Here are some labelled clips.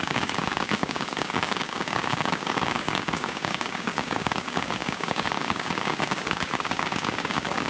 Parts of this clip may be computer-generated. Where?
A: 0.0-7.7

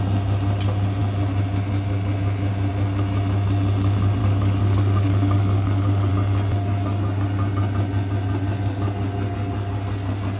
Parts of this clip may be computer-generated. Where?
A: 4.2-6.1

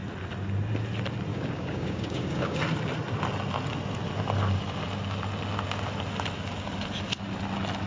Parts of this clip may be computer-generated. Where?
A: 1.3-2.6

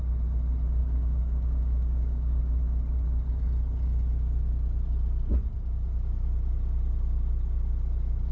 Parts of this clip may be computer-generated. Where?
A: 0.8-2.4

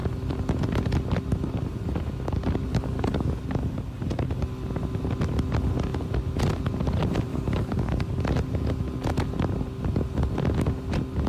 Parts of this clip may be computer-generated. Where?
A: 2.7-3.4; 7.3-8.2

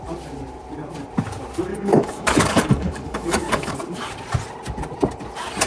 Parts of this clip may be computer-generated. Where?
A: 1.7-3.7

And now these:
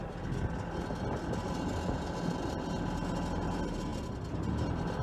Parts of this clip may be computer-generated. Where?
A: none

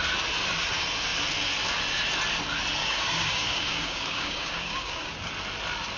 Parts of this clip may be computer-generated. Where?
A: 2.8-5.3